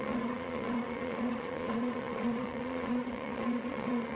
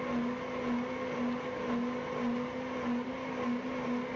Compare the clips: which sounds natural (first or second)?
second